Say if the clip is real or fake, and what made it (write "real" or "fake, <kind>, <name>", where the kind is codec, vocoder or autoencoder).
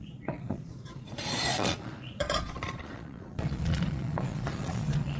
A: fake, vocoder, Vocos